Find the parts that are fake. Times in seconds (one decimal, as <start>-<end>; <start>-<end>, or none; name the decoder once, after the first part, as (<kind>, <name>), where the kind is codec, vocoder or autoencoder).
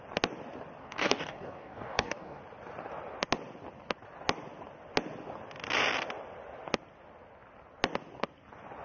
0.8-2.4 (codec, DAC)